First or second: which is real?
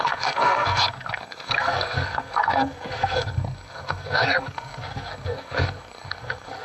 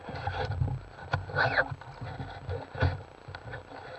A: second